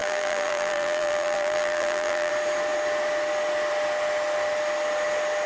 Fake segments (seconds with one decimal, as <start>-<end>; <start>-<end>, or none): 0.0-2.3